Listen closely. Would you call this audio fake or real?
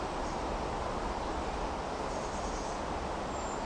real